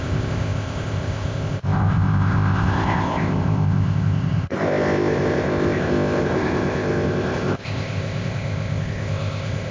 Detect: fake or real fake